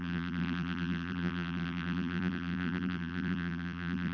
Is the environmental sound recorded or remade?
remade